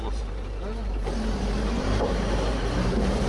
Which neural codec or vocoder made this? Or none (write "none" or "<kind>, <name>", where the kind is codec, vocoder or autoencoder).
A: vocoder, BigVGAN v2